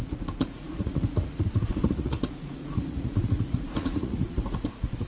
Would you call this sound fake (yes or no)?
yes